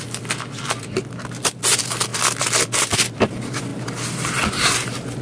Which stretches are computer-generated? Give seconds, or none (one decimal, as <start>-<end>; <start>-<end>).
none